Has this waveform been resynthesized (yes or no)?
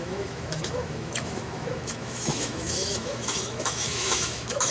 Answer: yes